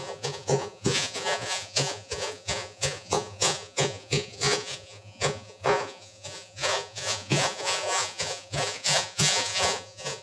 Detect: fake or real fake